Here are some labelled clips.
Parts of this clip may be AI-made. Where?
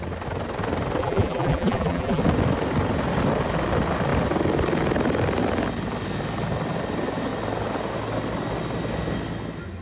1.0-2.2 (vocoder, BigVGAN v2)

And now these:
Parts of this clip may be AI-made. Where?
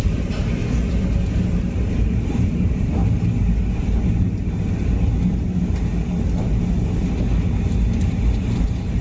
0.0-0.6 (vocoder, BigVGAN v2); 1.4-3.0; 8.1-9.0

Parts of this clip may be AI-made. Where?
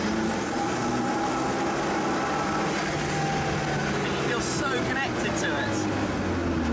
none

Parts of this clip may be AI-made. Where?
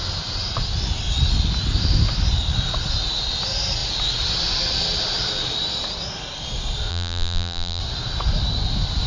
6.9-7.8 (vocoder, BigVGAN v2)